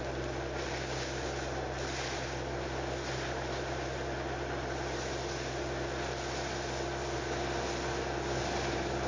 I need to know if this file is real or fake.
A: real